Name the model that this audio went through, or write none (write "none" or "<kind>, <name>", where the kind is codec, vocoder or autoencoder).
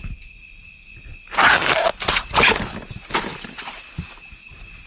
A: none